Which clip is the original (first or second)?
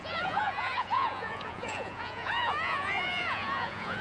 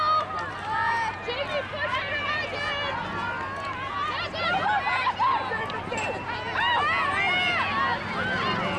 second